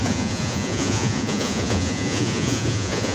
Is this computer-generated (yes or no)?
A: yes